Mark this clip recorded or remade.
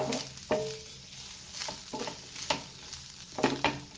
recorded